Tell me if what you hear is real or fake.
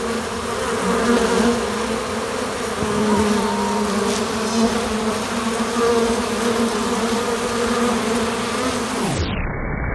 real